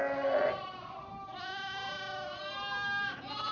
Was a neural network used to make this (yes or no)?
no